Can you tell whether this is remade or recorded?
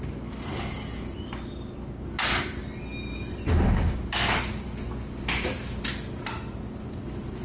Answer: recorded